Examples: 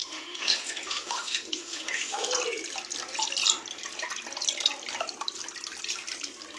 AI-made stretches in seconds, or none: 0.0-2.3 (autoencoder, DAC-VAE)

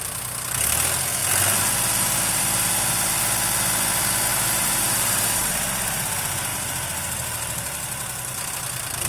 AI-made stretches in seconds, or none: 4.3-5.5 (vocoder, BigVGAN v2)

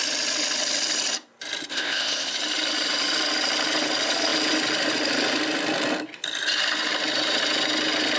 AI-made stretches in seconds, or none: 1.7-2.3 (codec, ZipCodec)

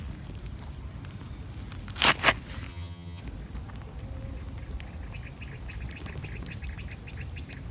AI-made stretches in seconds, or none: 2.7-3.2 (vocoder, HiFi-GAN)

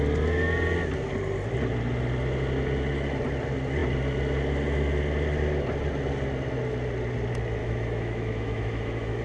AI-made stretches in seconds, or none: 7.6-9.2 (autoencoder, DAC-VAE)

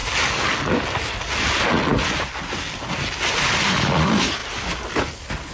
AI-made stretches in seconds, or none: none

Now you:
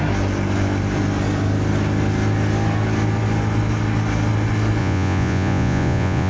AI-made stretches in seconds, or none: 4.8-6.3 (vocoder, Vocos)

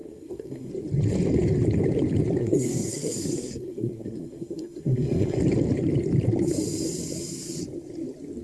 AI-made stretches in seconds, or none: 0.0-0.7 (codec, SNAC); 2.4-5.4